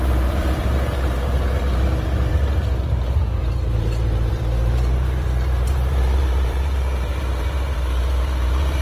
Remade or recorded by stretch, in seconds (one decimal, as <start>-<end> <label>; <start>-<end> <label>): 0.0-8.8 remade